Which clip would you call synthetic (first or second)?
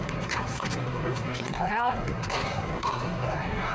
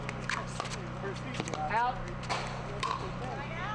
first